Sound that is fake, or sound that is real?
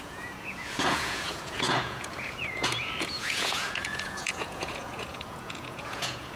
fake